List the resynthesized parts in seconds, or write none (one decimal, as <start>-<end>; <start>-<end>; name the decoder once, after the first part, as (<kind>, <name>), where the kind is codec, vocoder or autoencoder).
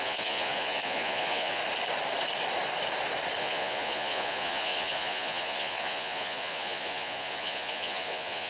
0.0-1.6 (vocoder, Vocos); 3.4-8.5